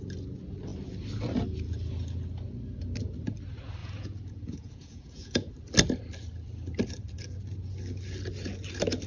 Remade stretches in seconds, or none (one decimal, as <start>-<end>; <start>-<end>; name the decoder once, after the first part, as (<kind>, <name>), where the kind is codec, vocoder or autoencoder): 3.8-5.5 (vocoder, Vocos)